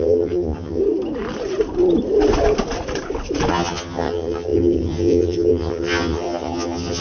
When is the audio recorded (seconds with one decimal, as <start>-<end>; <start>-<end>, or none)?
0.8-3.5